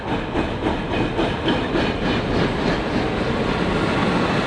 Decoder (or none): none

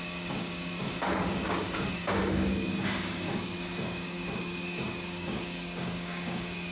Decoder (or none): codec, DAC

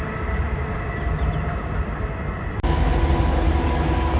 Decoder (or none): none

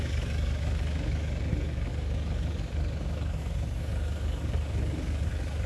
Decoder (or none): codec, DAC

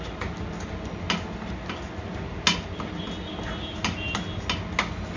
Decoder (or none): none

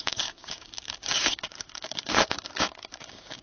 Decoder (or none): codec, DAC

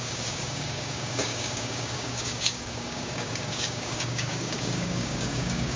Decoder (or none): codec, DAC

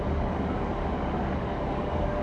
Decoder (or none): codec, DAC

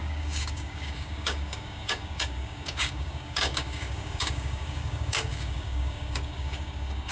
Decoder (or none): codec, DAC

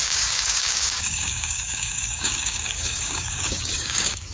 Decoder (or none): codec, DAC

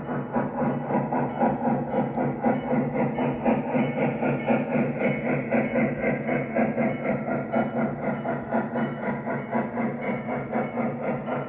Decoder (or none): none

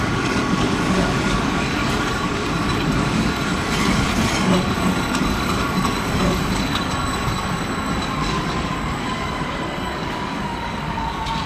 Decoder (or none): codec, DAC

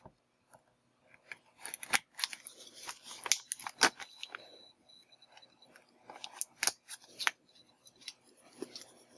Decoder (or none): none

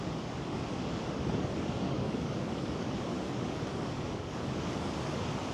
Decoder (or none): codec, DAC